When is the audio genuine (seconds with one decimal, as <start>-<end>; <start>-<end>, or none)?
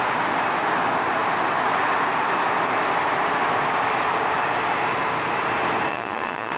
0.0-5.9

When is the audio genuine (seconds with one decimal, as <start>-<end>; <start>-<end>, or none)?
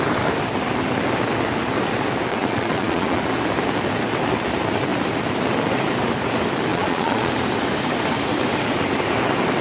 0.0-2.3; 3.2-6.7; 7.3-9.6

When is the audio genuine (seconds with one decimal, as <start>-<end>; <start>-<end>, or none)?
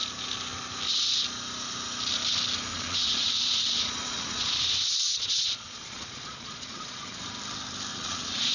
0.0-2.7; 7.2-7.9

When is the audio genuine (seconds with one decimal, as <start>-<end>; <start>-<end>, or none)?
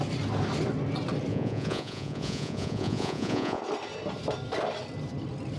0.0-1.3; 3.6-5.6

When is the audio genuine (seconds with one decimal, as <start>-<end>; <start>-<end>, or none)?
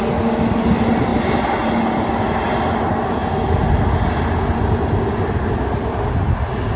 0.0-6.8